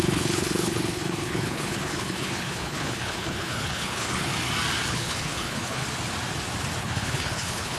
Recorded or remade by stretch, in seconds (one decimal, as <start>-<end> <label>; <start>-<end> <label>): 0.0-4.3 remade; 4.3-4.9 recorded; 4.9-5.8 remade; 5.8-6.8 recorded; 6.8-7.8 remade